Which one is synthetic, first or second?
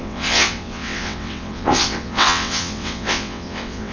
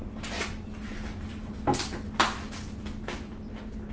first